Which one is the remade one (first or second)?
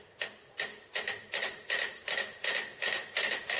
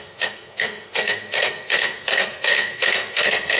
second